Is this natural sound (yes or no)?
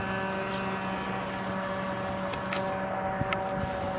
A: yes